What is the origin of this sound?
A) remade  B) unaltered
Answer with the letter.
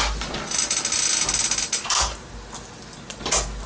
B